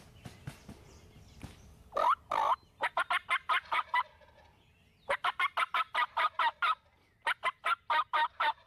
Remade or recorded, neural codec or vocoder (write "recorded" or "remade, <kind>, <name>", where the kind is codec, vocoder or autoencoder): recorded